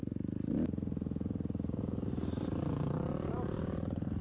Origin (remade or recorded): recorded